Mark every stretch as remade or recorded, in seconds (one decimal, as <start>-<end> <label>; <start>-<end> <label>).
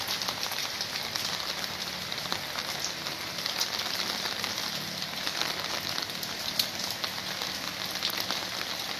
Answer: 0.0-9.0 recorded